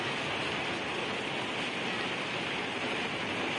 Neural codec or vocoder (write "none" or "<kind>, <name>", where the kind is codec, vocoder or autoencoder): none